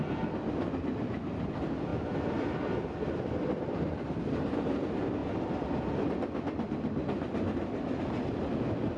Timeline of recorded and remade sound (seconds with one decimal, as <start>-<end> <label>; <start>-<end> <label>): 0.0-9.0 recorded